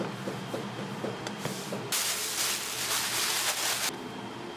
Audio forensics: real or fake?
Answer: real